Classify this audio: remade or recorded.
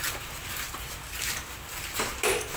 remade